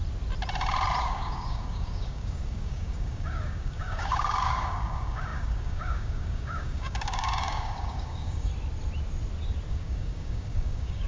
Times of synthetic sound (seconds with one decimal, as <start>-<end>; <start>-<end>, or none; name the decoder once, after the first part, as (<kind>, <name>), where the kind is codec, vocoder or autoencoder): 1.0-8.5 (codec, DAC); 9.7-11.1